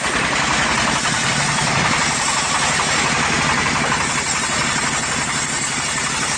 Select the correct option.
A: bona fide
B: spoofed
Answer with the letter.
A